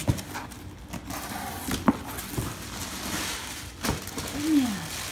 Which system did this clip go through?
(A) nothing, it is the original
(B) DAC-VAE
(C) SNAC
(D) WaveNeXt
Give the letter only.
A